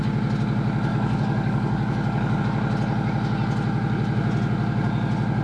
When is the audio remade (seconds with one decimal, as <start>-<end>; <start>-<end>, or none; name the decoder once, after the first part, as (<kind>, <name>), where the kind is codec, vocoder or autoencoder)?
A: 0.9-2.4 (codec, DAC)